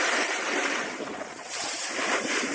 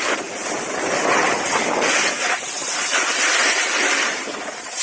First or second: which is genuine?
second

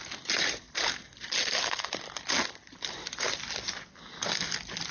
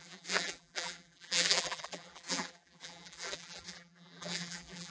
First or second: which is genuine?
first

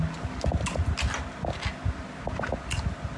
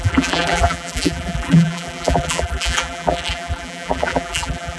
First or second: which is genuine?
first